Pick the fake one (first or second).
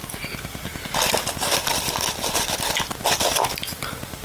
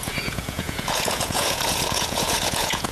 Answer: second